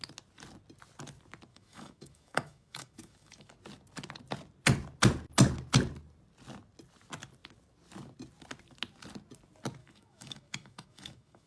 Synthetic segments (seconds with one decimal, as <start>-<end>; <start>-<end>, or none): 1.5-3.5; 9.8-11.5